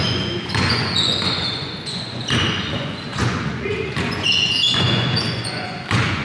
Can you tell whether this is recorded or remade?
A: remade